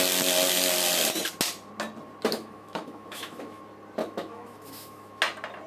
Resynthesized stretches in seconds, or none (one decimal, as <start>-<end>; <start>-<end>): 2.3-3.6; 4.0-5.2